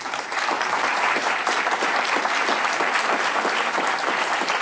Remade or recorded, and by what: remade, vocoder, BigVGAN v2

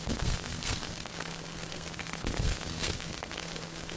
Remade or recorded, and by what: remade, codec, SNAC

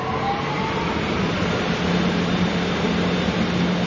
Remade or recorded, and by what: recorded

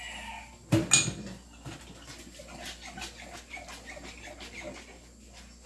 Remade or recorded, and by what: recorded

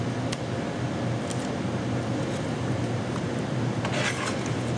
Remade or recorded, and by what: recorded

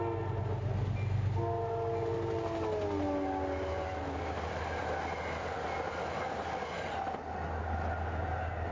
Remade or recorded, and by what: recorded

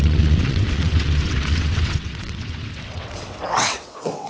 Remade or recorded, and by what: remade, vocoder, WaveNeXt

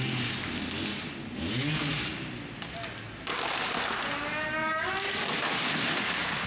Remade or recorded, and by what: recorded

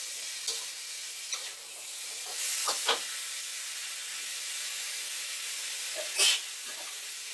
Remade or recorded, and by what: recorded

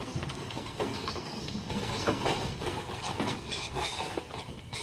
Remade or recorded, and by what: remade, codec, SNAC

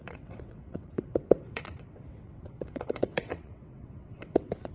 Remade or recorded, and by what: remade, vocoder, WaveNeXt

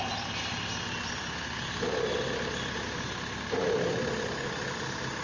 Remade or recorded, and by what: recorded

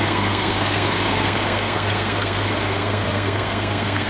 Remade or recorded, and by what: remade, codec, SNAC